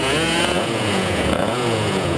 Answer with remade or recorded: remade